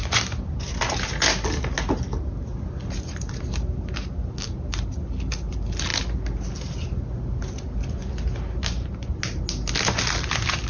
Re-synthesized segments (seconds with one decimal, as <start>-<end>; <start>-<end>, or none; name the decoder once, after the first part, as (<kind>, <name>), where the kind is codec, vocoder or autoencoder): none